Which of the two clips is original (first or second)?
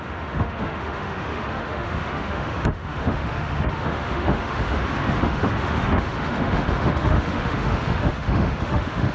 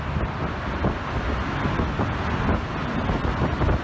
second